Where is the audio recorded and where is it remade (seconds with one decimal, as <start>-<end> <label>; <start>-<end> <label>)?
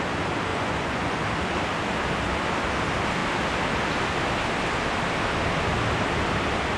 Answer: 0.0-0.5 recorded; 0.5-1.2 remade; 1.2-6.8 recorded